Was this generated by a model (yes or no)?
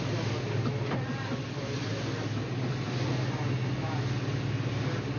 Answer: no